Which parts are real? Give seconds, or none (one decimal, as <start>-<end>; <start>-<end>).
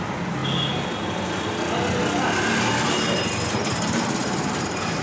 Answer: 0.0-4.2